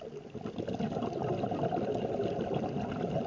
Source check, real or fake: real